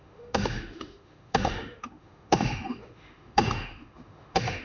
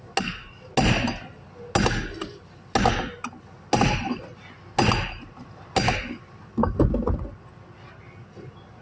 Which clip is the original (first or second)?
second